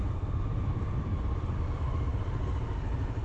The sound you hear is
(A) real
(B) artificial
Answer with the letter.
A